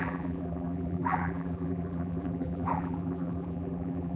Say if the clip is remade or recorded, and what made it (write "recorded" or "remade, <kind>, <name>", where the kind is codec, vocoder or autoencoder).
remade, vocoder, BigVGAN v2